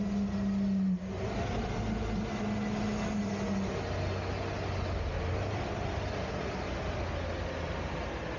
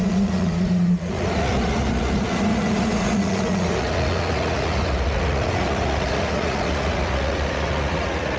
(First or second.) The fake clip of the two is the second